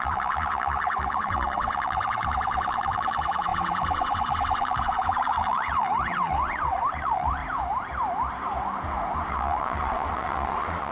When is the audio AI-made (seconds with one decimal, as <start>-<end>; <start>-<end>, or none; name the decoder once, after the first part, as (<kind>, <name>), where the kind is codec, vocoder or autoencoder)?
0.0-7.4 (vocoder, WaveNeXt); 9.3-10.9